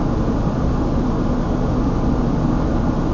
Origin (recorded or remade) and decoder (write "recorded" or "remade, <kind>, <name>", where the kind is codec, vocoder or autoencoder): recorded